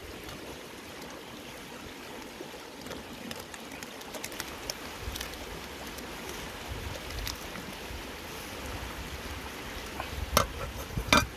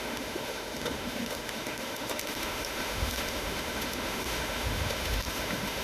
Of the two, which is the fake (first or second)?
second